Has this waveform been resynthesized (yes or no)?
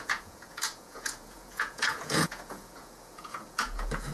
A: yes